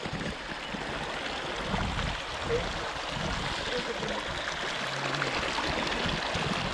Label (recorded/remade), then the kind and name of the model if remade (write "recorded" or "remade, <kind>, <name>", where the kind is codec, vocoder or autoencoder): recorded